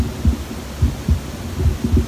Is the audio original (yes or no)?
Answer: yes